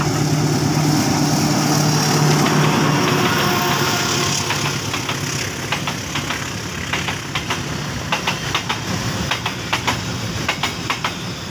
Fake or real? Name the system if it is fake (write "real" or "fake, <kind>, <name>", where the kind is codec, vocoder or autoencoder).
real